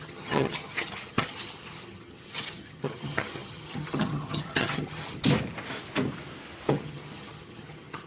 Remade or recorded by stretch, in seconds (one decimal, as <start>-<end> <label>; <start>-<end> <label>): 0.0-5.2 remade; 5.2-6.7 recorded; 6.7-8.1 remade